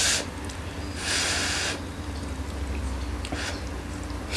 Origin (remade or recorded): recorded